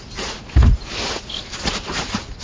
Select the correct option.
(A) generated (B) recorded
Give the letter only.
B